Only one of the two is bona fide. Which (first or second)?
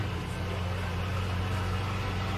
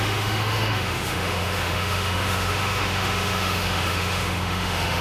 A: first